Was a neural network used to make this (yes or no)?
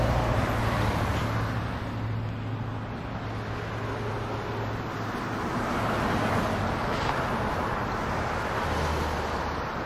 no